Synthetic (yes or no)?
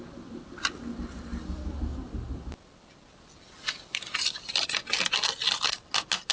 no